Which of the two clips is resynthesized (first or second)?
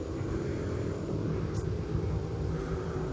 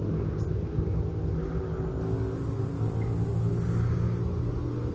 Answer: first